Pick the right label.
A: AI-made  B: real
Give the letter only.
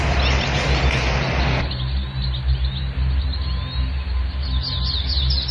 B